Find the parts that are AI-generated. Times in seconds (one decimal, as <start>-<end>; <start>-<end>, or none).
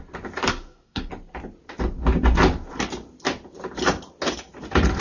0.5-1.1